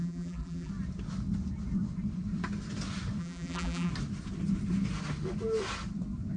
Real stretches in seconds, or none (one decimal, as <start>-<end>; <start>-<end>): 0.7-3.2; 3.9-6.4